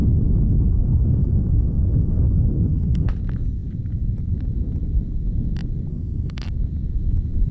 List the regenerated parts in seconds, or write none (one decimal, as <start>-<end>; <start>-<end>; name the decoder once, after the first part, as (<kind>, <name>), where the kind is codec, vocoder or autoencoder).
0.0-3.1 (codec, SNAC); 5.9-6.5